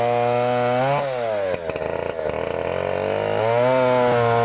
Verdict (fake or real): real